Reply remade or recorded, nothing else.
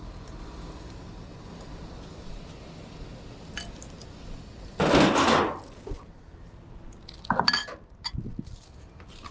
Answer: recorded